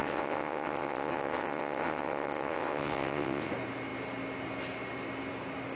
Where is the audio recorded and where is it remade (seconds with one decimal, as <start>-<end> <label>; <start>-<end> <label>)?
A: 0.0-3.5 remade; 3.5-5.8 recorded